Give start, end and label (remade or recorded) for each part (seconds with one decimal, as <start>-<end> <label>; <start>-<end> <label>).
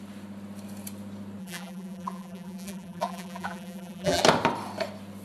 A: 0.0-1.4 recorded; 1.4-4.2 remade; 4.2-5.2 recorded